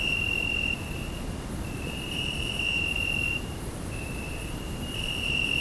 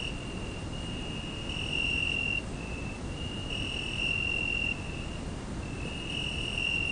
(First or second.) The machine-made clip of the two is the first